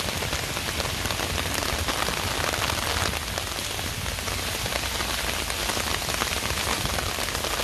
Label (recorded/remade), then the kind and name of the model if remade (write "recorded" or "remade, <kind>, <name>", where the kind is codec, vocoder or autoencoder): recorded